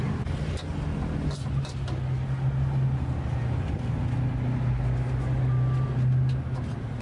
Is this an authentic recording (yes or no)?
yes